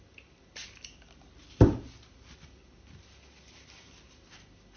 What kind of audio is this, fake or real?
real